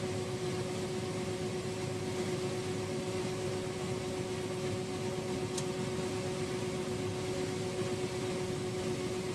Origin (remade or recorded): recorded